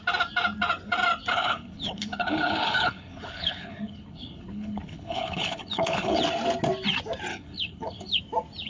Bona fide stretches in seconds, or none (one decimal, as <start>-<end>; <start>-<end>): 0.0-1.3; 6.2-7.3; 8.2-8.7